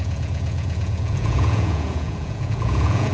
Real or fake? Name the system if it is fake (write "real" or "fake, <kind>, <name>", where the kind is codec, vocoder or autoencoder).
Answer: fake, vocoder, Vocos